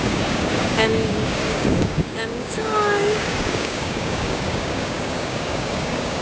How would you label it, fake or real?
fake